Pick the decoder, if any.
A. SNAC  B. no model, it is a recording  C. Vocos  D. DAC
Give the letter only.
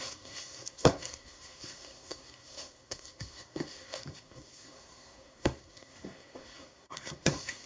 A